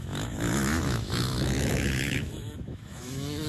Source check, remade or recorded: remade